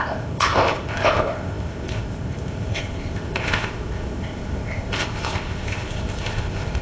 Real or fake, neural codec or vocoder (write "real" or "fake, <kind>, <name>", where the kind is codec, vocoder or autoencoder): fake, codec, ZipCodec